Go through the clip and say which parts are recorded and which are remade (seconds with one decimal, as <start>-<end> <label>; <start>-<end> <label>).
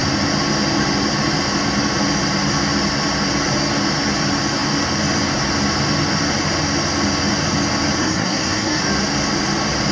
0.0-8.0 recorded; 8.0-8.8 remade; 8.8-9.9 recorded